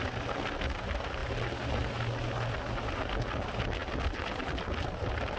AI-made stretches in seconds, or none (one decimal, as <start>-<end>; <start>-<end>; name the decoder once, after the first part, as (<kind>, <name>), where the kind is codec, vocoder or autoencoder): none